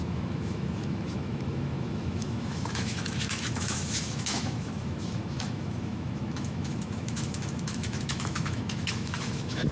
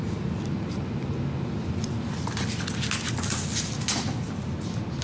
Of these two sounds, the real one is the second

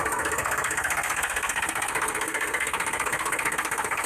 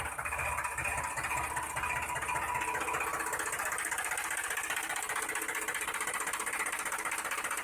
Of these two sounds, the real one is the second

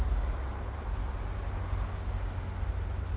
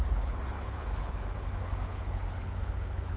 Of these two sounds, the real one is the first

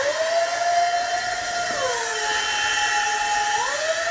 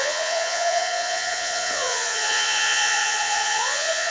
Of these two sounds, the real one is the first